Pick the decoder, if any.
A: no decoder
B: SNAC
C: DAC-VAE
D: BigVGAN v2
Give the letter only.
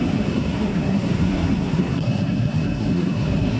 B